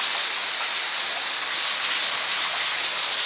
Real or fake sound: real